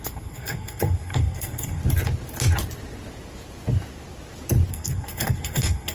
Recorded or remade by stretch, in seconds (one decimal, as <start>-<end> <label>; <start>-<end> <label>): 0.0-1.8 remade; 1.8-4.7 recorded; 4.7-5.9 remade